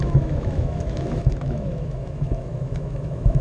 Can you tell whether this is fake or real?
fake